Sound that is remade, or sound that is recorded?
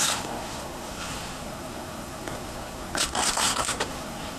remade